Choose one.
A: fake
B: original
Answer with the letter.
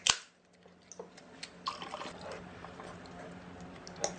B